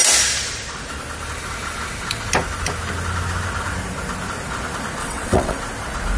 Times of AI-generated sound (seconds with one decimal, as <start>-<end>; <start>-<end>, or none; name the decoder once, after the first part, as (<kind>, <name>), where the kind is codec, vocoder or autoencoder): 5.0-5.6 (vocoder, WaveNeXt)